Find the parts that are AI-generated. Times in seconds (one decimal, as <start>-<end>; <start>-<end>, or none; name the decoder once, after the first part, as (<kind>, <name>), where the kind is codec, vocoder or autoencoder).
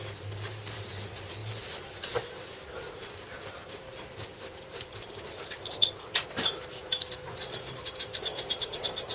0.0-9.1 (vocoder, BigVGAN v2)